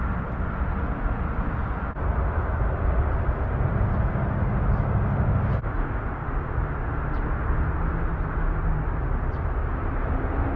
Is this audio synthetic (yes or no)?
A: no